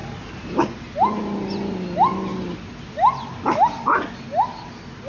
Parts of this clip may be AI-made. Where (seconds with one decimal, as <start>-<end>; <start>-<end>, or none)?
none